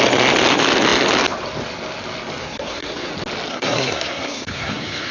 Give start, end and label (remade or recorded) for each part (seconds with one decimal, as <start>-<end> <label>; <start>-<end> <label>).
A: 0.0-2.4 recorded; 2.4-3.1 remade; 3.1-3.5 recorded; 3.5-5.1 remade